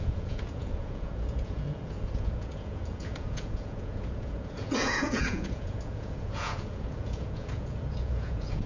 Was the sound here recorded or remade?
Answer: remade